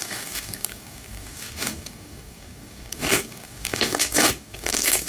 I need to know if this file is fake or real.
fake